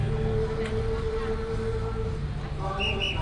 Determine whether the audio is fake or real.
real